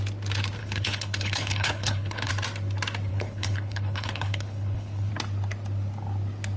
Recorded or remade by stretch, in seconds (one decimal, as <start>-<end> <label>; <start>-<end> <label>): 0.0-0.6 recorded; 0.6-2.3 remade; 2.3-3.1 recorded; 3.1-5.1 remade; 5.1-6.6 recorded